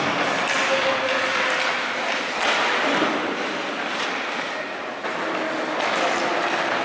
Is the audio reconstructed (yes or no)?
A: no